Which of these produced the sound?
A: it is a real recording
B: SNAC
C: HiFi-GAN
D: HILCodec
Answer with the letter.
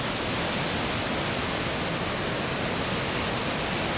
A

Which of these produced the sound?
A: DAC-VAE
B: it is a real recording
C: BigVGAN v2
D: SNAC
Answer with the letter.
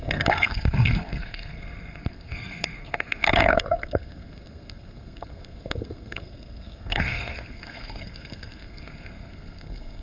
D